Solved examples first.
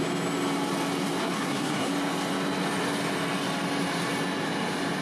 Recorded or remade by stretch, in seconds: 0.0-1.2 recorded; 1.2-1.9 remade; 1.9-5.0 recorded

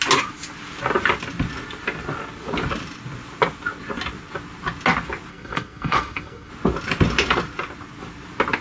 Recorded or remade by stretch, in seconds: 0.0-5.3 recorded; 5.3-6.5 remade; 6.5-8.6 recorded